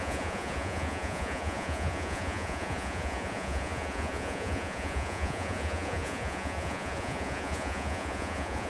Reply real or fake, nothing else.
fake